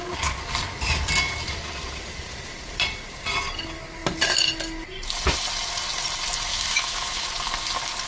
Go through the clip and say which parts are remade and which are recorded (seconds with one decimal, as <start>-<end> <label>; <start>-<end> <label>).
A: 0.0-6.5 recorded; 6.5-7.3 remade; 7.3-8.1 recorded